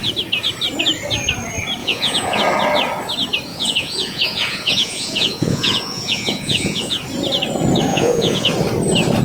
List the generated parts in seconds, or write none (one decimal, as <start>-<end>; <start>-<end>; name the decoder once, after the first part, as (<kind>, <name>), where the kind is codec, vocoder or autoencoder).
1.8-2.4 (vocoder, Vocos); 3.5-7.0; 7.9-8.5